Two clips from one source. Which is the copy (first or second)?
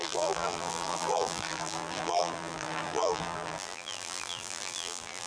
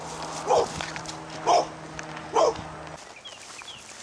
first